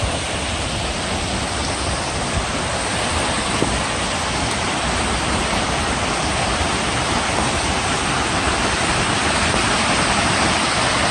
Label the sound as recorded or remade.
remade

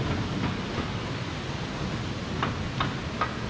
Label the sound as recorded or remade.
recorded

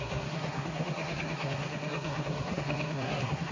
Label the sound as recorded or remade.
remade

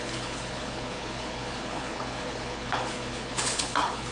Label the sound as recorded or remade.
remade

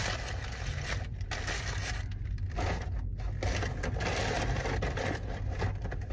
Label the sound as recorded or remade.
recorded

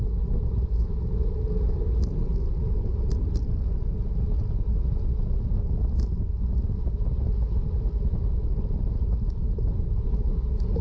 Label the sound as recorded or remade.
recorded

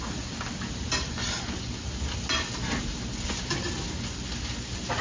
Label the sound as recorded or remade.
recorded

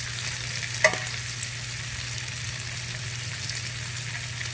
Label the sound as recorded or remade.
recorded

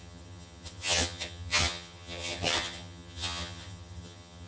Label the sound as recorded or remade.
remade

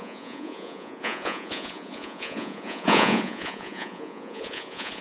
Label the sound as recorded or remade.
remade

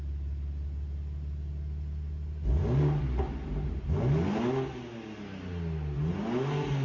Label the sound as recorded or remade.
recorded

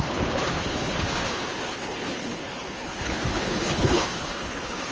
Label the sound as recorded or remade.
remade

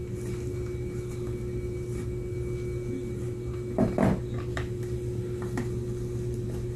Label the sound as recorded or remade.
recorded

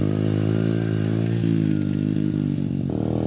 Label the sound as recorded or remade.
recorded